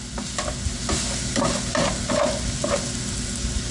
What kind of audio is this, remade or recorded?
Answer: recorded